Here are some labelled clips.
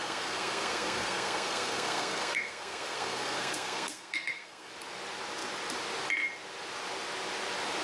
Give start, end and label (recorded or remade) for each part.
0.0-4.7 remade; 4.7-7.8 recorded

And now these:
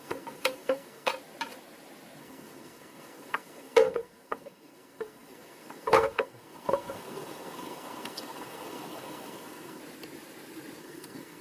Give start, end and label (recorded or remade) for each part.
0.0-1.1 remade; 1.1-2.2 recorded; 2.2-9.8 remade; 9.8-10.8 recorded; 10.8-11.4 remade

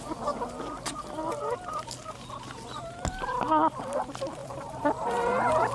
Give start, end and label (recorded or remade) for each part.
0.0-4.4 recorded; 4.4-5.7 remade

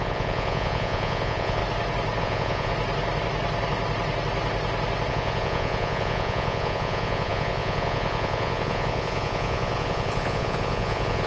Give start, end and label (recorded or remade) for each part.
0.0-1.6 remade; 1.6-2.2 recorded; 2.2-2.7 remade; 2.7-5.1 recorded; 5.1-11.3 remade

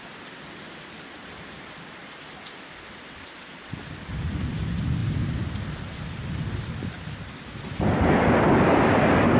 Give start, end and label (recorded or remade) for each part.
0.0-2.0 remade; 2.0-4.6 recorded; 4.6-5.0 remade; 5.0-6.8 recorded; 6.8-9.4 remade

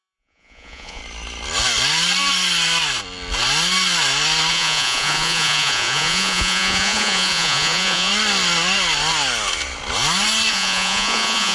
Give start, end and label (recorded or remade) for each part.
0.0-1.0 remade; 1.0-4.5 recorded; 4.5-8.1 remade; 8.1-10.5 recorded; 10.5-11.5 remade